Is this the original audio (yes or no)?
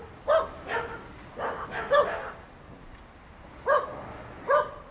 yes